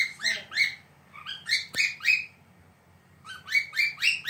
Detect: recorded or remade remade